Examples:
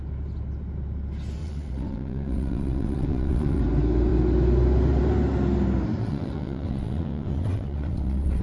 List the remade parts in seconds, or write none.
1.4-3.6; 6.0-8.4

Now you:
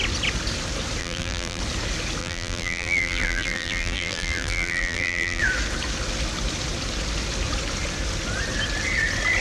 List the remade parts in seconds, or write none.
1.0-1.6; 2.2-5.4

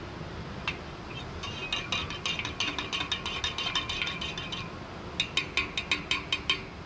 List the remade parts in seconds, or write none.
none

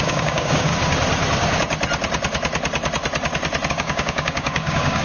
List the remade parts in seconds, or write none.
0.0-0.7; 3.7-5.0

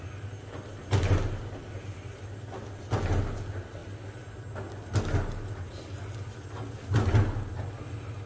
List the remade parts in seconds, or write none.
none

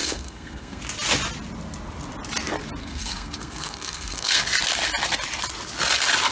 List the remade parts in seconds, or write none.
0.0-0.8; 2.8-4.4

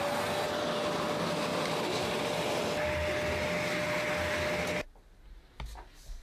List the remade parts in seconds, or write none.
none